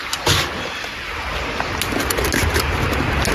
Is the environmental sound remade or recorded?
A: recorded